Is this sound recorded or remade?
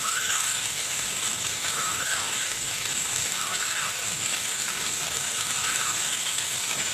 remade